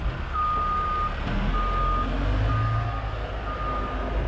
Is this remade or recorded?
recorded